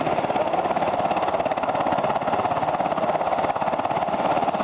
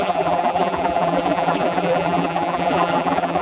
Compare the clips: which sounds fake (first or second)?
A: second